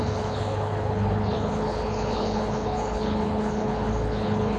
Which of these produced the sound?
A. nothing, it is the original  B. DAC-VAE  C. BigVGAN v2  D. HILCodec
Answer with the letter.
D